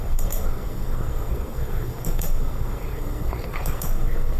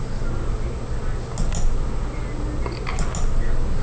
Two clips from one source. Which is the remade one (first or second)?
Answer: first